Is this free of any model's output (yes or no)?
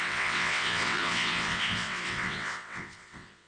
no